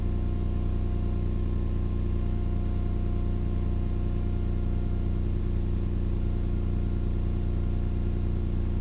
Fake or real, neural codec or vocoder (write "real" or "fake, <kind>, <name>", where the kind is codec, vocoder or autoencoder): real